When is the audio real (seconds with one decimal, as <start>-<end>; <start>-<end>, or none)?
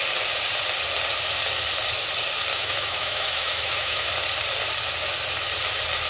0.0-2.5; 4.1-6.1